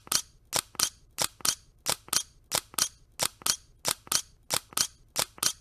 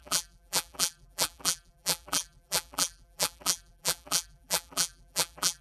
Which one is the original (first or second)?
first